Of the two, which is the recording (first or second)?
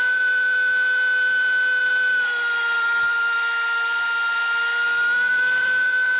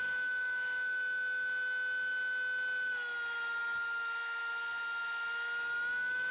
second